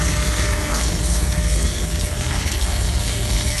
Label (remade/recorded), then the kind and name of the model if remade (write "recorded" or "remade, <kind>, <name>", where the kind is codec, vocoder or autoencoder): remade, codec, SNAC